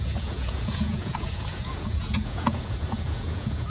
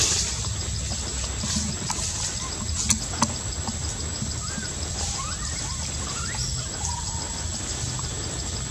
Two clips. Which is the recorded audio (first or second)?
second